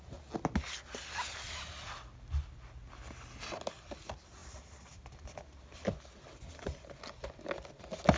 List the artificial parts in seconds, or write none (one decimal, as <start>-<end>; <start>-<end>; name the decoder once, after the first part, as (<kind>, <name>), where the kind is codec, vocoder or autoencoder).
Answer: none